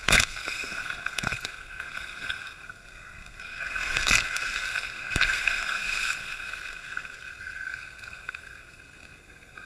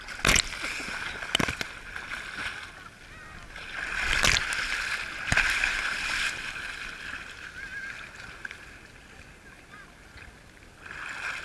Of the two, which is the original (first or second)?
second